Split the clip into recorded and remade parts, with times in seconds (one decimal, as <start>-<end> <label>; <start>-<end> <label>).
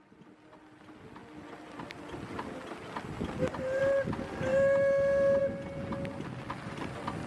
0.0-7.3 recorded